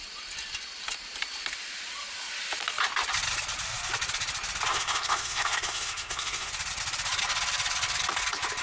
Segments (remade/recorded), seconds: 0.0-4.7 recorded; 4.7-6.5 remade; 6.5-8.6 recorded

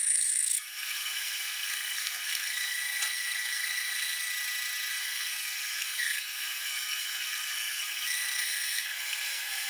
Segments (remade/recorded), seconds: 0.0-4.3 remade; 4.3-4.9 recorded; 4.9-9.7 remade

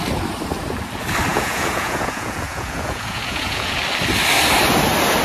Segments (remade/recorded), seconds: 0.0-1.3 recorded; 1.3-3.8 remade; 3.8-5.2 recorded

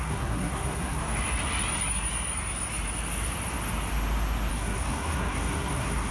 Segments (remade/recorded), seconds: 0.0-1.0 remade; 1.0-4.5 recorded; 4.5-6.1 remade

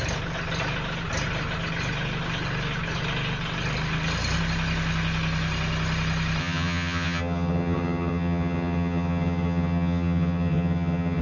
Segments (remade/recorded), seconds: 0.0-6.4 recorded; 6.4-11.2 remade